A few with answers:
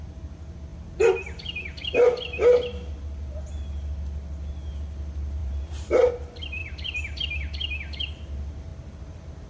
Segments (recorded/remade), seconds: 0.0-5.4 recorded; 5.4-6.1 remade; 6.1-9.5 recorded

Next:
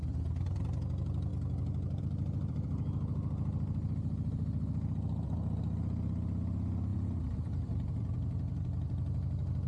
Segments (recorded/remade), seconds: 0.0-6.9 recorded; 6.9-9.7 remade

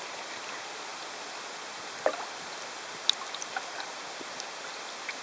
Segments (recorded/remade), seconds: 0.0-0.9 recorded; 0.9-4.0 remade; 4.0-5.2 recorded

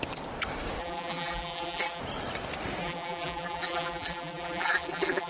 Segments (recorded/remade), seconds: 0.0-0.8 recorded; 0.8-2.0 remade; 2.0-2.8 recorded; 2.8-5.3 remade

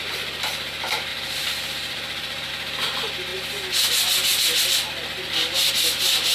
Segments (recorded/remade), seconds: 0.0-1.1 recorded; 1.1-2.5 remade; 2.5-6.3 recorded